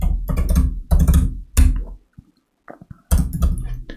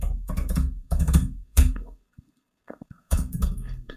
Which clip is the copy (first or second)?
second